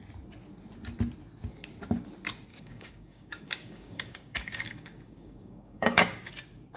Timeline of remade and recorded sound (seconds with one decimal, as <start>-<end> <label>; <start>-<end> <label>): 0.0-2.5 recorded; 2.5-6.3 remade; 6.3-6.8 recorded